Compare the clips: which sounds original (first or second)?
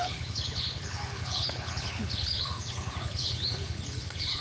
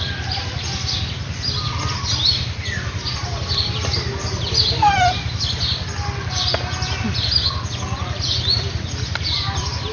second